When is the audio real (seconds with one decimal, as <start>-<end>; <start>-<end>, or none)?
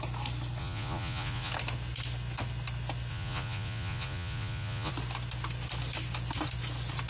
0.0-0.6; 1.5-3.1; 4.9-7.1